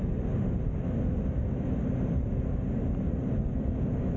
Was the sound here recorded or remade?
recorded